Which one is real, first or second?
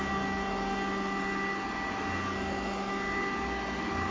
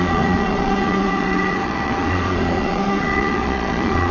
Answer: first